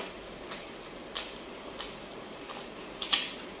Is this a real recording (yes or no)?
yes